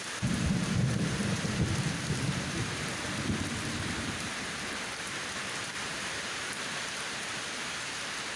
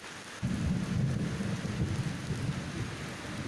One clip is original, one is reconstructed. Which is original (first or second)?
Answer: second